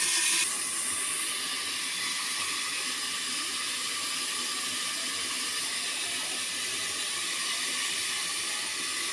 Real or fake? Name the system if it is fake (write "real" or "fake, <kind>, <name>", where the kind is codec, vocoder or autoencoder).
real